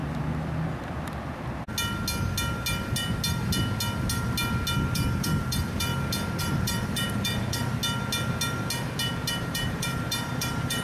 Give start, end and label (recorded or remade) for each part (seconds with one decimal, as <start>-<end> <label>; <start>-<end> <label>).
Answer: 0.0-4.9 recorded; 4.9-5.9 remade; 5.9-6.4 recorded; 6.4-7.8 remade; 7.8-9.3 recorded; 9.3-10.8 remade